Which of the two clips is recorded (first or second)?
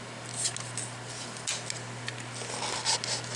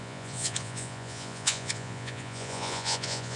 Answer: first